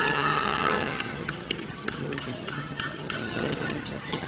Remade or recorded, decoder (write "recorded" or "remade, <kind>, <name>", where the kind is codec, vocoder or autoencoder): remade, vocoder, HiFi-GAN